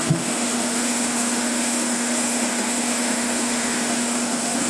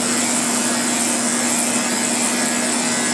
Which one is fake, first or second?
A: first